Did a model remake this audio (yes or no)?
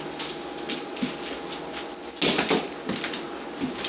no